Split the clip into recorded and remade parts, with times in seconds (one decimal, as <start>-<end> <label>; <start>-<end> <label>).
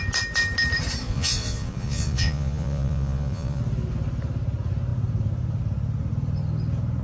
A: 0.0-1.0 recorded; 1.0-3.6 remade; 3.6-7.0 recorded